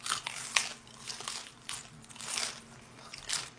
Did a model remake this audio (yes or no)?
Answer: no